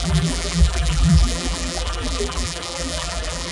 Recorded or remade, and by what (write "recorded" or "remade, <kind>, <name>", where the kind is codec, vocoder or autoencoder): remade, vocoder, BigVGAN v2